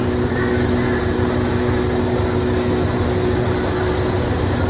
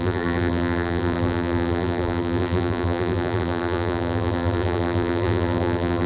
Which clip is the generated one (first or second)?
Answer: second